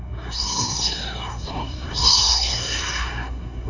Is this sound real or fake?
fake